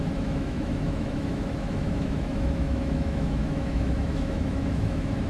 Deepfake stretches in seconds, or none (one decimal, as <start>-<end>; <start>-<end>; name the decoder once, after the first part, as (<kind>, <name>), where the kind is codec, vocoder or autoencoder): 0.0-5.3 (autoencoder, DAC-VAE)